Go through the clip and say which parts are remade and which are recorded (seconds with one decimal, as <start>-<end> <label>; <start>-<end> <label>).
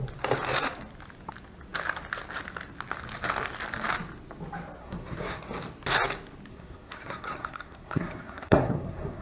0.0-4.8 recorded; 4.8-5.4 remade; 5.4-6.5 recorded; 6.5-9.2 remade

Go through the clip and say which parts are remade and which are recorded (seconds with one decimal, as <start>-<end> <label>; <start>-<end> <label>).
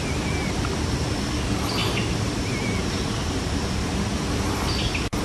0.0-1.8 recorded; 1.8-4.8 remade; 4.8-5.2 recorded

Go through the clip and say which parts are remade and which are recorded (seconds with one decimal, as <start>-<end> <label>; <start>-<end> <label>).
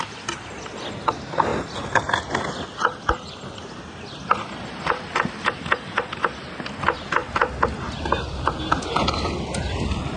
0.0-10.2 recorded